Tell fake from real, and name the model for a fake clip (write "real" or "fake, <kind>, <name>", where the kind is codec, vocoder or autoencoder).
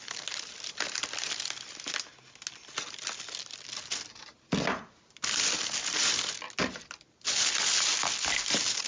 real